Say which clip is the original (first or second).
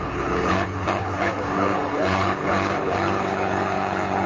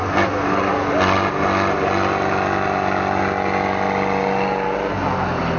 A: second